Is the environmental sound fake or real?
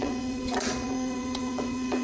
fake